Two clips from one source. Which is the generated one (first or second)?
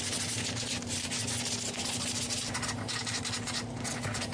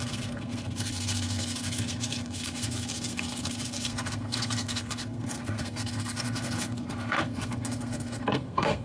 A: second